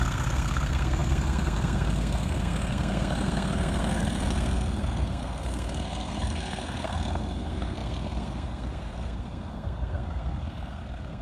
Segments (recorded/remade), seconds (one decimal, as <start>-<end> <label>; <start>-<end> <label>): 0.0-11.2 remade